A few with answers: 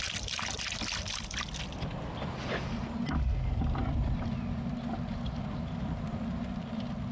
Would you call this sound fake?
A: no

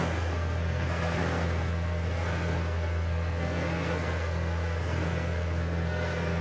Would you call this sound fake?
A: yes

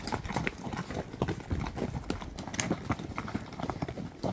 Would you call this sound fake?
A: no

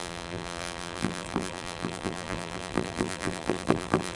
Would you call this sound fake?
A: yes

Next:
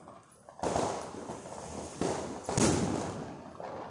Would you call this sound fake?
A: no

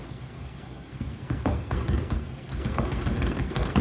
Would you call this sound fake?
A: yes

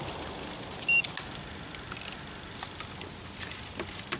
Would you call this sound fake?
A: no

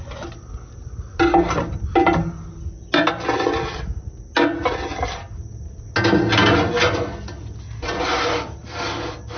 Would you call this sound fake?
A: no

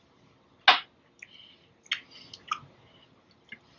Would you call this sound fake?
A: no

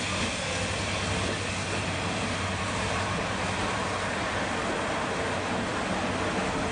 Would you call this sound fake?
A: no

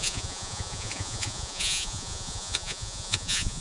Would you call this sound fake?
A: yes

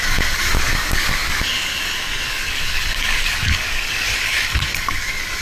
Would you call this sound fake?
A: yes